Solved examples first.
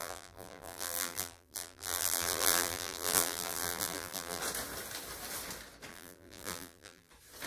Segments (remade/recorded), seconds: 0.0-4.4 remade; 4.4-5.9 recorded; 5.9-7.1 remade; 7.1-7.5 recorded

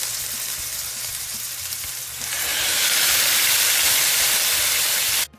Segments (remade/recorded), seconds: 0.0-1.1 recorded; 1.1-2.0 remade; 2.0-2.5 recorded; 2.5-3.7 remade; 3.7-5.4 recorded

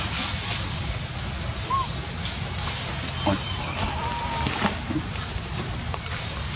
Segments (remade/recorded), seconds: 0.0-4.2 recorded; 4.2-6.6 remade

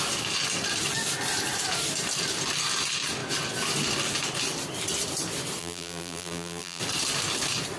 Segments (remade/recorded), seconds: 0.0-5.6 recorded; 5.6-6.8 remade; 6.8-7.8 recorded

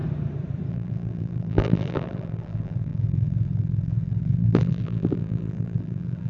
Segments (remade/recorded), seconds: 0.0-0.7 recorded; 0.7-6.3 remade

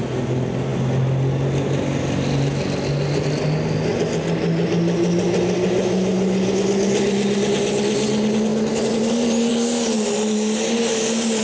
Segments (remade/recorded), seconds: 0.0-11.4 recorded

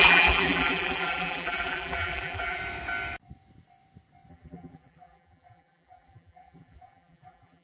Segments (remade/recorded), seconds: 0.0-2.6 remade; 2.6-4.3 recorded; 4.3-7.6 remade

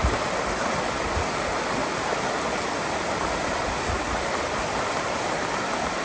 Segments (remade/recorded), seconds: 0.0-1.8 recorded; 1.8-2.3 remade; 2.3-6.0 recorded